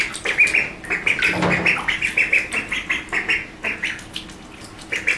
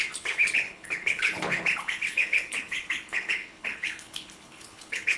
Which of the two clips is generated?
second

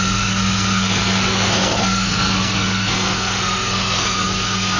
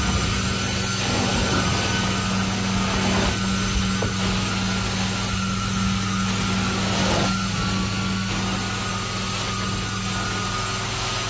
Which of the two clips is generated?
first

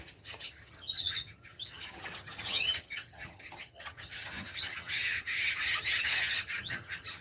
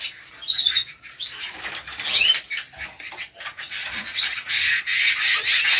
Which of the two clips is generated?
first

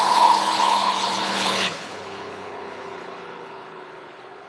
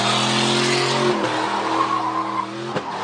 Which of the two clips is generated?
first